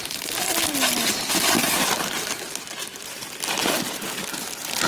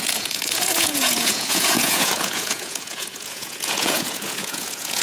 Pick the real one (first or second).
first